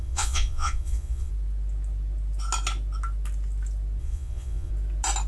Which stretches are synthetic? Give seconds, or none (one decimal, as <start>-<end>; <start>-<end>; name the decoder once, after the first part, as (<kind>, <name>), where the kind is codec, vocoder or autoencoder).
0.0-1.3 (vocoder, Vocos); 4.0-4.7